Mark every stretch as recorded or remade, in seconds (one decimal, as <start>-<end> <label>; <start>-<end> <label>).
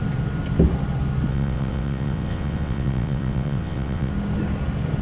0.0-1.3 recorded; 1.3-4.1 remade; 4.1-5.0 recorded